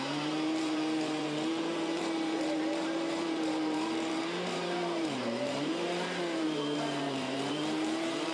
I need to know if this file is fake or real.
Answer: fake